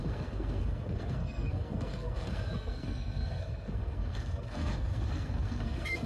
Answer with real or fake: fake